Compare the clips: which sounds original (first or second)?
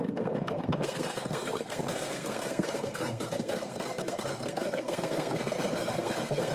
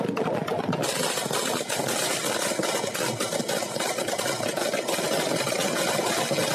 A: second